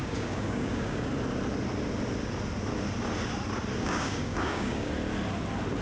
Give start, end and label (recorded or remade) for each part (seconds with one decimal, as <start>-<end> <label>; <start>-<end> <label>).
0.0-1.1 remade; 1.1-3.8 recorded; 3.8-4.9 remade; 4.9-5.8 recorded